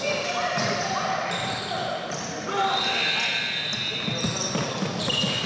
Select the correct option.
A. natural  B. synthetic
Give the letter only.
A